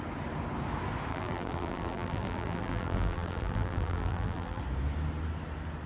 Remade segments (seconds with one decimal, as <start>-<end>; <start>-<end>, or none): 1.1-4.6